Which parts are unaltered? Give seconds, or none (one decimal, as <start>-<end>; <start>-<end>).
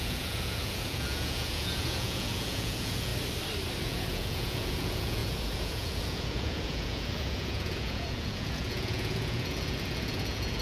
3.1-3.8